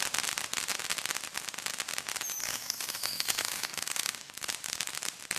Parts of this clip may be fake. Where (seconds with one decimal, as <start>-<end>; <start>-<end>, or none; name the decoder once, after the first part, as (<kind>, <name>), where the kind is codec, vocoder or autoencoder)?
2.4-4.3 (codec, DAC)